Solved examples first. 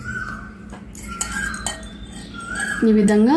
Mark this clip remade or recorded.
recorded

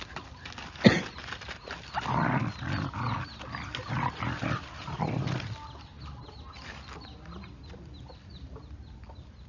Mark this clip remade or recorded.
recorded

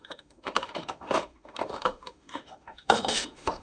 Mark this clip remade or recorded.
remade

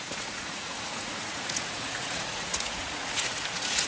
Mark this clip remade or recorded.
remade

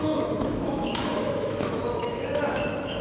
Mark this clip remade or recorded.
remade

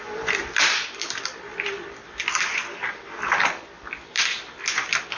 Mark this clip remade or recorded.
remade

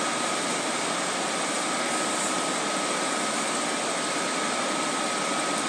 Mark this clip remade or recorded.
remade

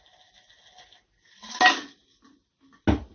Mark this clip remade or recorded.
recorded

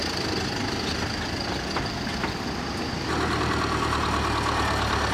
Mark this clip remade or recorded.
recorded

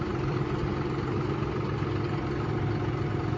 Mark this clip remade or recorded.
remade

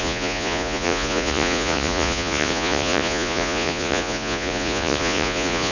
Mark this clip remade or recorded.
remade